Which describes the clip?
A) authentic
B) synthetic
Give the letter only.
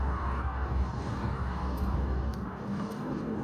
B